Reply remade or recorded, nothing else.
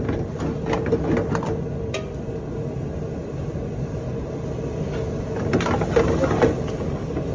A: recorded